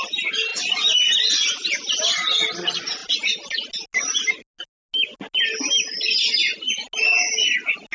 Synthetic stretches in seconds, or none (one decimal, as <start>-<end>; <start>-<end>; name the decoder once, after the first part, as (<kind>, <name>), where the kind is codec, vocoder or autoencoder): none